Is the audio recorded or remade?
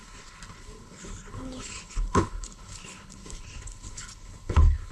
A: remade